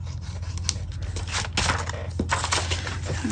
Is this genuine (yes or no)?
yes